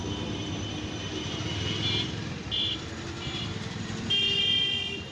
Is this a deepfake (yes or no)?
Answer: no